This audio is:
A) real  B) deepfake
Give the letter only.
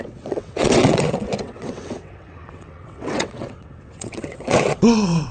B